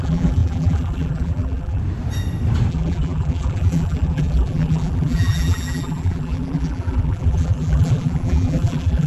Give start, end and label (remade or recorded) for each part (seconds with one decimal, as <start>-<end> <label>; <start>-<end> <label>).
0.0-1.8 remade; 1.8-2.7 recorded; 2.7-9.1 remade